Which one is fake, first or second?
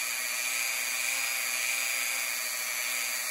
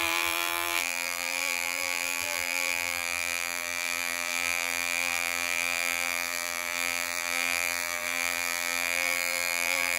second